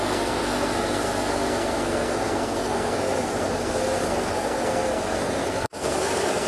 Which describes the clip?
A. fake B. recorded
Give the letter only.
A